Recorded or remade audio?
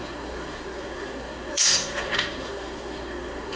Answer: remade